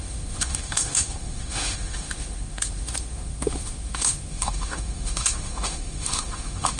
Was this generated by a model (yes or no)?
yes